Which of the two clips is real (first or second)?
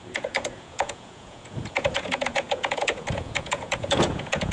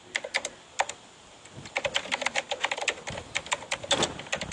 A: second